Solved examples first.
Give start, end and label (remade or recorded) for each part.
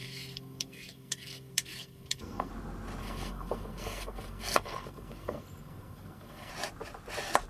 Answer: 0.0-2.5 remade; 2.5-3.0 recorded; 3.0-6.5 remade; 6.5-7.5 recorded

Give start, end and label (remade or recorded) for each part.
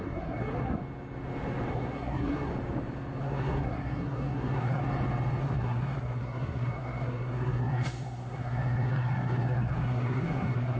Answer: 0.0-0.8 remade; 0.8-1.7 recorded; 1.7-2.5 remade; 2.5-3.2 recorded; 3.2-4.8 remade; 4.8-5.4 recorded; 5.4-10.8 remade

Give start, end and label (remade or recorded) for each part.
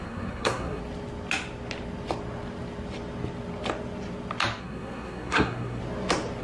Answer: 0.0-0.8 remade; 0.8-4.6 recorded; 4.6-5.8 remade; 5.8-6.4 recorded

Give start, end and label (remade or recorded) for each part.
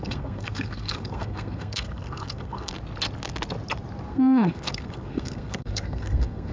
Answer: 0.0-2.7 remade; 2.7-4.1 recorded; 4.1-6.5 remade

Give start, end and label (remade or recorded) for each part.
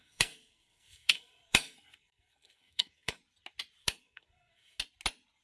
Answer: 0.0-3.2 remade; 3.2-3.8 recorded; 3.8-4.8 remade; 4.8-5.4 recorded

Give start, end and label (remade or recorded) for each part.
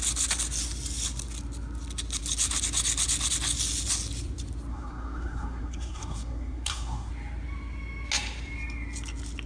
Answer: 0.0-4.7 recorded; 4.7-7.1 remade; 7.1-9.5 recorded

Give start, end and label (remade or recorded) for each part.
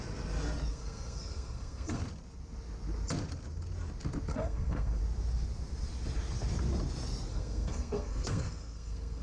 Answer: 0.0-0.7 recorded; 0.7-2.0 remade; 2.0-4.3 recorded; 4.3-5.0 remade; 5.0-7.3 recorded; 7.3-9.2 remade